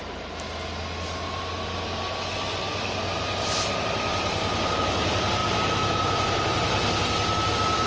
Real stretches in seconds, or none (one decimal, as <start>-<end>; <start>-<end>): 0.0-7.9